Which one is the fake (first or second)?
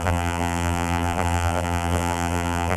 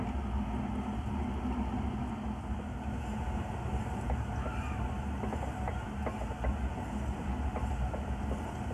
first